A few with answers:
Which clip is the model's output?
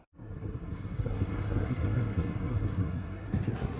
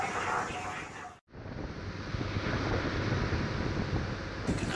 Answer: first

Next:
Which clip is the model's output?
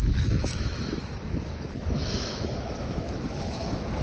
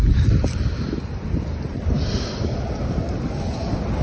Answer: first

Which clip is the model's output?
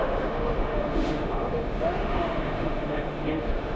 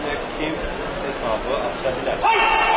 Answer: first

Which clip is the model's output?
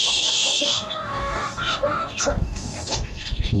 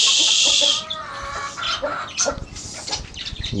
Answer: first